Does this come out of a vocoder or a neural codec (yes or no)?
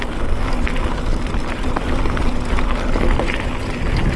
no